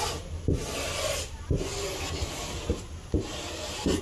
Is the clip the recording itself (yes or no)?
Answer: no